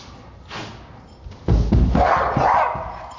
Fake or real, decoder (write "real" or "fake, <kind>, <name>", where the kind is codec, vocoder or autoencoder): real